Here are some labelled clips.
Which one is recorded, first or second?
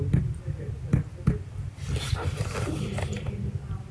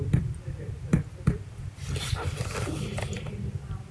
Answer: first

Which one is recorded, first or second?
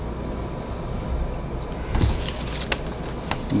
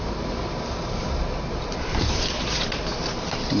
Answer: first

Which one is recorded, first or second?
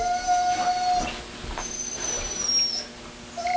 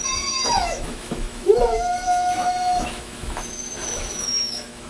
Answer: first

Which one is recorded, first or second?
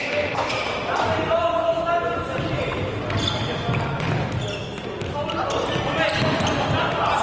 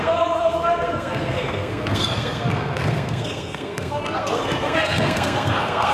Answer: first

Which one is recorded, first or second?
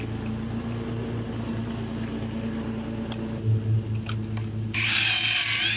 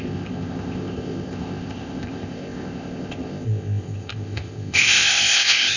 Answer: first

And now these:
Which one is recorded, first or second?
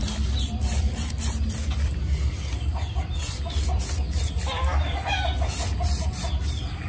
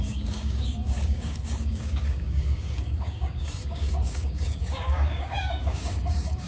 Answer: first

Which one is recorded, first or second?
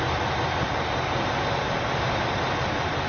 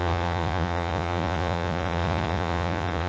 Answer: first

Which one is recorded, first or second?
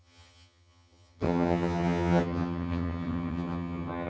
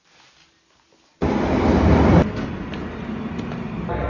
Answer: second